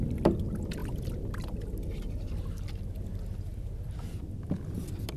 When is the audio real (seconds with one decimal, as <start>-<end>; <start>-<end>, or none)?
0.0-5.2